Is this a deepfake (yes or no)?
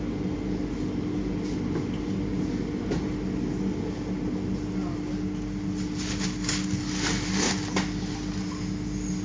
no